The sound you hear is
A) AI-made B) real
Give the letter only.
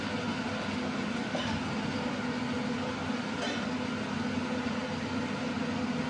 B